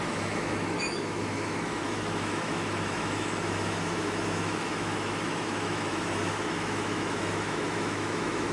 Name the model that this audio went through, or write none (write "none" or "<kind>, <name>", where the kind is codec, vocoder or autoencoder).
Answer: autoencoder, DAC-VAE